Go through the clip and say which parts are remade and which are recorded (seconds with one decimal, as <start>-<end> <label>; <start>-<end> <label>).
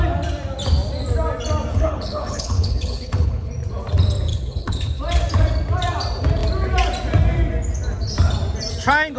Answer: 0.0-1.7 recorded; 1.7-3.5 remade; 3.5-4.3 recorded; 4.3-5.0 remade; 5.0-9.2 recorded